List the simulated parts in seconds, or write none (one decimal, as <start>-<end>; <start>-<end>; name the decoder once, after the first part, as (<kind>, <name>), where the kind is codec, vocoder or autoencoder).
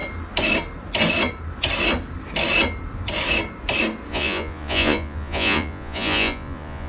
4.1-6.9 (vocoder, Vocos)